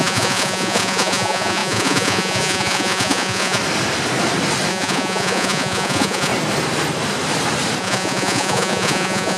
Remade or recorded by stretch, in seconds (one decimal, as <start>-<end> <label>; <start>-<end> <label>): 0.0-3.6 remade; 3.6-4.7 recorded; 4.7-6.3 remade; 6.3-7.8 recorded; 7.8-9.4 remade